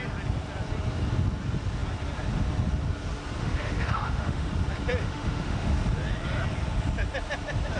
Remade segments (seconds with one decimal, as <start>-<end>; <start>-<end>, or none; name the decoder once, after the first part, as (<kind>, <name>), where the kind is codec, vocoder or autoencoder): 3.4-4.5 (autoencoder, DAC-VAE); 5.0-5.7